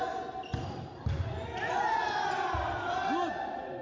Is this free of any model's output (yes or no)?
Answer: yes